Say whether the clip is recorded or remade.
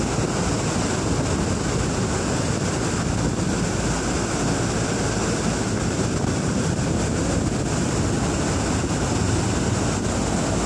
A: recorded